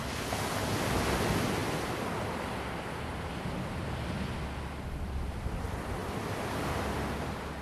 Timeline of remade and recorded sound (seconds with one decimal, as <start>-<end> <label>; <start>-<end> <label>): 0.0-7.6 recorded